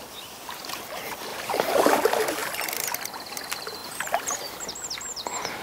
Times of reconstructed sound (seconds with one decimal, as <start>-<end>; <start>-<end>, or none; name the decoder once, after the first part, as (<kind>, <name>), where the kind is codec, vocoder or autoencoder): 1.3-2.0 (vocoder, BigVGAN v2)